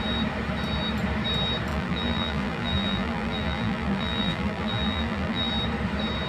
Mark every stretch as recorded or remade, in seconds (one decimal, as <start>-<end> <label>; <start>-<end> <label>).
0.0-1.7 recorded; 1.7-5.5 remade; 5.5-6.3 recorded